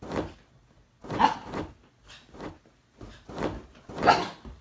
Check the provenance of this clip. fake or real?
real